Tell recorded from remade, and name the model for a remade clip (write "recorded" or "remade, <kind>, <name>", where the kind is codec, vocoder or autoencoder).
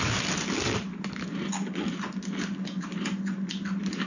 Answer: recorded